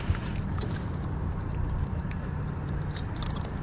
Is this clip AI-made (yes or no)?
yes